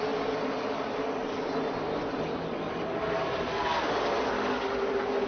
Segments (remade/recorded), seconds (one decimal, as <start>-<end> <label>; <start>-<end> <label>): 0.0-5.3 recorded